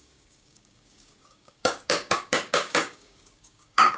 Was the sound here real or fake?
fake